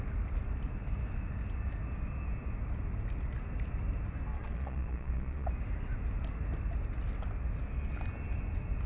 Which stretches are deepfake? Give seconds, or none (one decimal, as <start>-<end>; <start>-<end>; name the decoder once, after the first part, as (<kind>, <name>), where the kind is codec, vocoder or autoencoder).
4.3-5.5 (vocoder, Vocos)